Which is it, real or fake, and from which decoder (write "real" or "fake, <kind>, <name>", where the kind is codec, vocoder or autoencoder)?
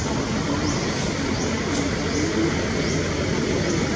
real